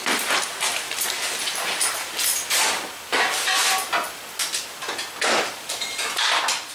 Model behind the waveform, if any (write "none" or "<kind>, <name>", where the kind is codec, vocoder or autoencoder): none